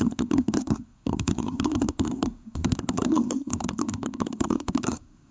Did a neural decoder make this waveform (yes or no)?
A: yes